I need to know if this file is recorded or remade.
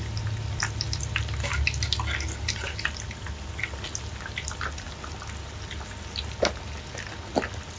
recorded